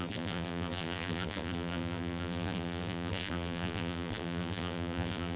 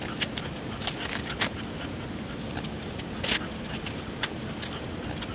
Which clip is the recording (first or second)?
second